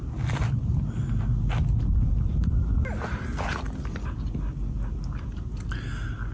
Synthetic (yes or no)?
no